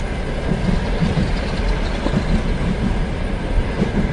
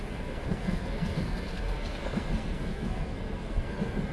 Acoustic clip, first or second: first